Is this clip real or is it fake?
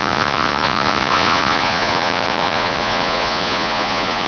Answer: fake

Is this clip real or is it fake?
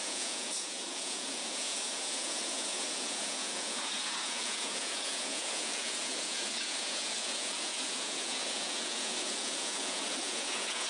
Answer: fake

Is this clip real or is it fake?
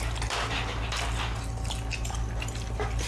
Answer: real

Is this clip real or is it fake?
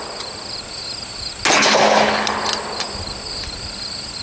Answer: real